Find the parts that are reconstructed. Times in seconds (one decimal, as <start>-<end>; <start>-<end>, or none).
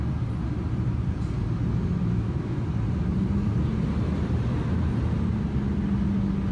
2.0-2.6